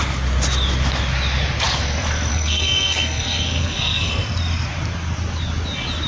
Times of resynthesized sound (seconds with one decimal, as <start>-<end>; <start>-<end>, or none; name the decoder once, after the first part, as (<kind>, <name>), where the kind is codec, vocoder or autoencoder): 2.3-4.1 (codec, SNAC)